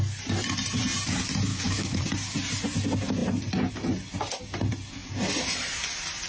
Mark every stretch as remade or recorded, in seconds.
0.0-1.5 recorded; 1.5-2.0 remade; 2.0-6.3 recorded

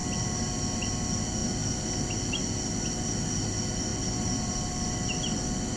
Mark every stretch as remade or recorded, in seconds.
0.0-5.8 recorded

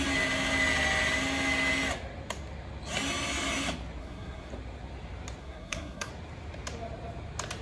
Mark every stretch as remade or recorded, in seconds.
0.0-4.0 recorded; 4.0-4.5 remade; 4.5-5.4 recorded; 5.4-6.1 remade; 6.1-7.6 recorded

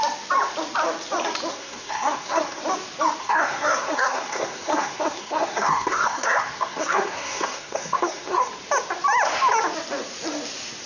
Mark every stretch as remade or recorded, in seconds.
0.0-1.5 recorded; 1.5-2.6 remade; 2.6-3.2 recorded; 3.2-8.5 remade; 8.5-10.9 recorded

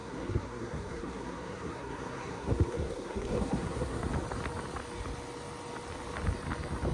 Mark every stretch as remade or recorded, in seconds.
0.0-4.1 remade; 4.1-6.9 recorded

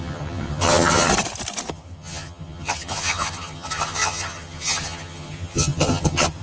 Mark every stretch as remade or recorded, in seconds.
0.0-1.1 remade; 1.1-1.7 recorded; 1.7-6.4 remade